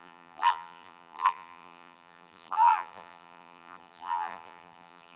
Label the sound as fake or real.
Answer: fake